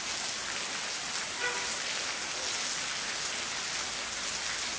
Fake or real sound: real